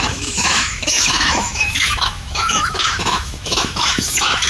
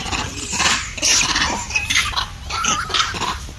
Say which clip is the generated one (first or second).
first